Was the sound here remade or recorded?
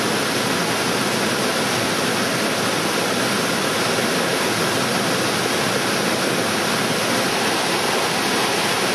recorded